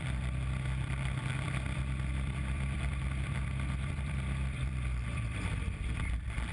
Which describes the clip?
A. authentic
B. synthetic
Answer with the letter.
B